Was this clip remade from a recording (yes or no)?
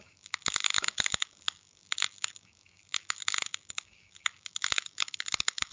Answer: yes